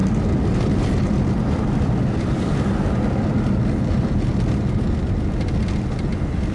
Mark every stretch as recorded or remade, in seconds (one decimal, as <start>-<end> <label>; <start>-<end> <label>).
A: 0.0-6.5 recorded

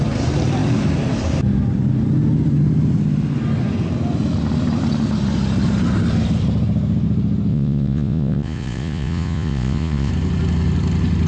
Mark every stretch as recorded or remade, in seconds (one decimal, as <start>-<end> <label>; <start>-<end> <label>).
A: 0.0-7.5 recorded; 7.5-10.1 remade; 10.1-11.3 recorded